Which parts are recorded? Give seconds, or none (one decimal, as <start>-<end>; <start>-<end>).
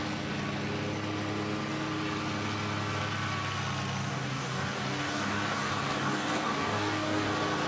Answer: 0.0-4.1; 7.3-7.7